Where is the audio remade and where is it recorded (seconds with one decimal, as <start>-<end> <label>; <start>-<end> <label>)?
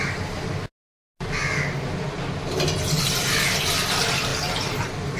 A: 0.0-4.3 recorded; 4.3-5.2 remade